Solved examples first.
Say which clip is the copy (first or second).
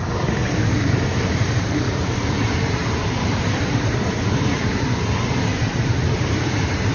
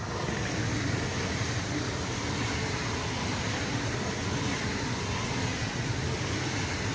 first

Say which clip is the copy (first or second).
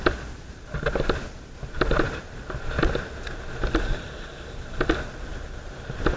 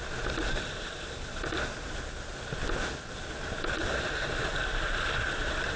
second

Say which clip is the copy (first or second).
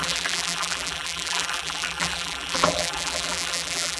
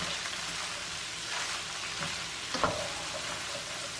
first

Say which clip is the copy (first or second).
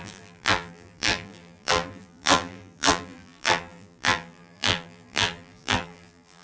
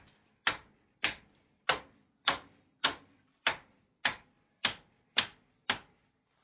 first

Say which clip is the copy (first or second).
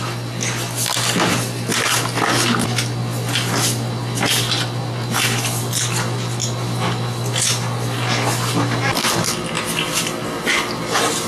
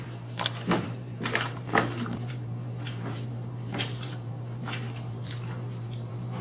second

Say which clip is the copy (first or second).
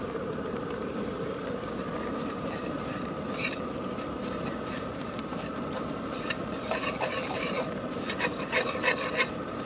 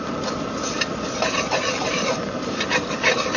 first